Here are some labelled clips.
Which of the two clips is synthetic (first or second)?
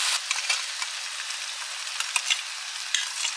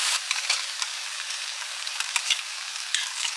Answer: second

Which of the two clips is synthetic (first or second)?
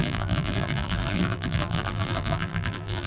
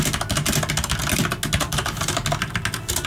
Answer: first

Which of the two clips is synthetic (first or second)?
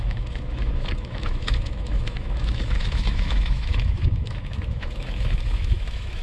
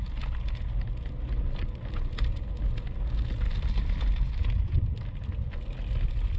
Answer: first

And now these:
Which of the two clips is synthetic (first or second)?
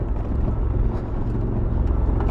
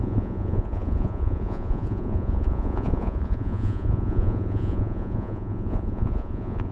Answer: second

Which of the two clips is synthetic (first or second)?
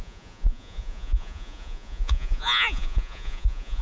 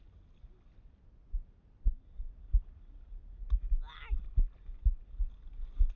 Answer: first